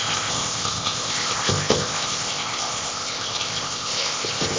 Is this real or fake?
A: fake